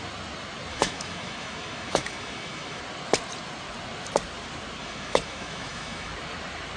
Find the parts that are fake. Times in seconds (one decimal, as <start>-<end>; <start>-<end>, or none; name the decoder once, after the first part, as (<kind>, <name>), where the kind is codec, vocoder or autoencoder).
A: 0.7-2.8 (autoencoder, DAC-VAE); 4.8-6.1